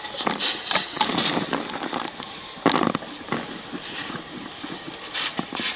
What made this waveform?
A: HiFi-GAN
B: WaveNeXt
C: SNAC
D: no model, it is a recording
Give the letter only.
D